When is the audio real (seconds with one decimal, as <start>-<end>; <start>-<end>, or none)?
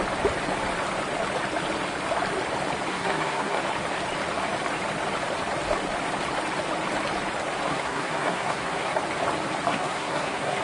0.0-2.9; 3.6-7.7; 9.0-9.7